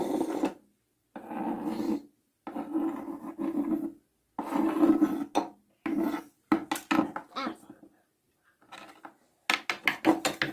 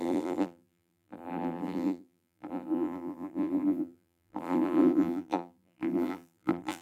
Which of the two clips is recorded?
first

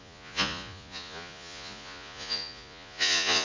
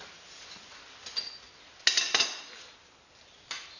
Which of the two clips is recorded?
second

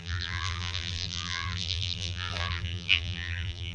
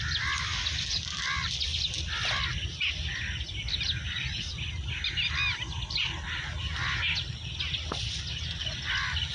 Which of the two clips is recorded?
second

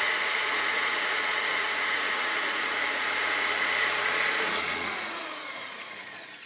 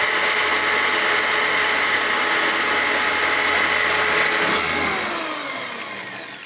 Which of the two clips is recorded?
second